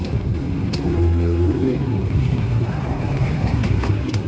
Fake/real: fake